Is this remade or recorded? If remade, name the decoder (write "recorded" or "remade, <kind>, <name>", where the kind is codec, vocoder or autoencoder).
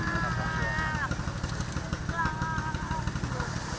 recorded